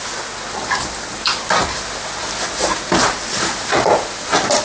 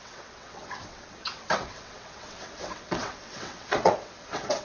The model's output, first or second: second